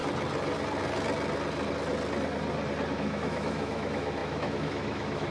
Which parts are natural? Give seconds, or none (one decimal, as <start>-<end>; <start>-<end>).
0.0-2.9